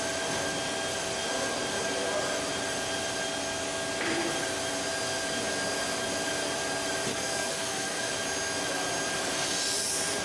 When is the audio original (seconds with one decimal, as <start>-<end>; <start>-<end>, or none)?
0.0-7.1; 8.1-10.2